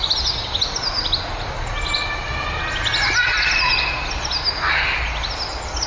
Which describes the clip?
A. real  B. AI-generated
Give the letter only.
A